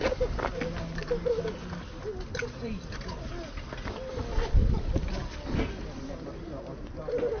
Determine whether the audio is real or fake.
real